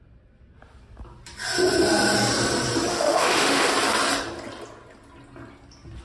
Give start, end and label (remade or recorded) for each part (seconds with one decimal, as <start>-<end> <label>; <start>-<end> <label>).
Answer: 0.0-2.9 recorded; 2.9-3.7 remade; 3.7-6.0 recorded